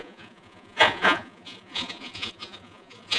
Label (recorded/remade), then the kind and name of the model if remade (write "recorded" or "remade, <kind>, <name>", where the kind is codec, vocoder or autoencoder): remade, vocoder, Vocos